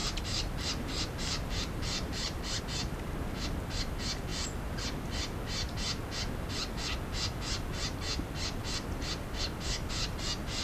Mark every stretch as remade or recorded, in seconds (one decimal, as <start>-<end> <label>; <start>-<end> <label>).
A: 0.0-2.6 remade; 2.6-10.6 recorded